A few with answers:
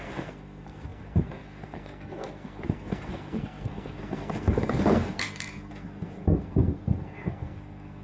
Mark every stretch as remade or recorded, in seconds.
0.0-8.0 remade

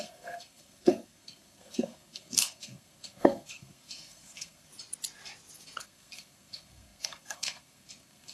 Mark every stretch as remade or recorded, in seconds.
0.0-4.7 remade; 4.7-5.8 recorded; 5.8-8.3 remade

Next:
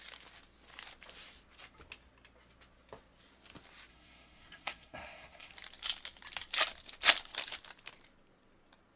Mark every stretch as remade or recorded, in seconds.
0.0-3.9 recorded; 3.9-5.5 remade; 5.5-9.0 recorded

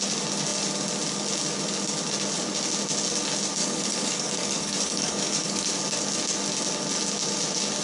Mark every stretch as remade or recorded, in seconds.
0.0-3.6 recorded; 3.6-5.8 remade; 5.8-7.8 recorded

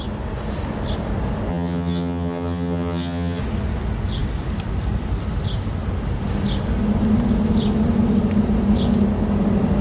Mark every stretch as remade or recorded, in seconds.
0.0-1.5 recorded; 1.5-3.4 remade; 3.4-9.8 recorded

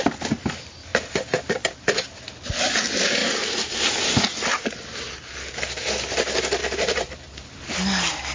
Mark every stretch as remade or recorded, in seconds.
0.0-6.6 recorded; 6.6-7.6 remade; 7.6-8.3 recorded

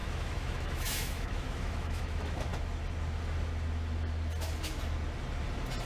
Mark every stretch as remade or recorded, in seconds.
0.0-2.5 remade; 2.5-5.9 recorded